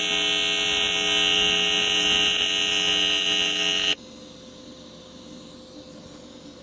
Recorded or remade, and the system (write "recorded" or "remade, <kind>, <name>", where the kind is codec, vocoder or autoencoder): recorded